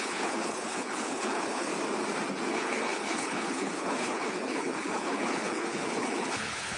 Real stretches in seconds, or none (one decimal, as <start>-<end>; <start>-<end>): 1.7-2.5

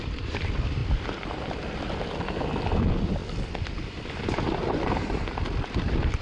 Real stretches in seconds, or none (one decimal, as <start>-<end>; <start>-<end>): 3.2-6.2

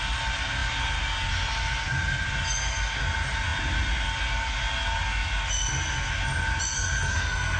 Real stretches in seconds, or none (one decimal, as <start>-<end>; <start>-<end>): 0.0-7.1